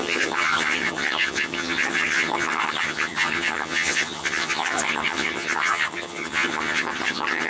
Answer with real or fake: fake